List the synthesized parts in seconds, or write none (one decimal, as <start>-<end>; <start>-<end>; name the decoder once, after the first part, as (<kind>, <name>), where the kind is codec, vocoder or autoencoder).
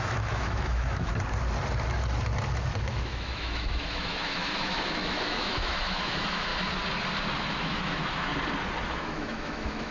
0.0-1.1 (autoencoder, DAC-VAE); 2.9-6.5; 7.5-8.3; 8.9-9.9